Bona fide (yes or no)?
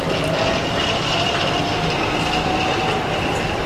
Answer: yes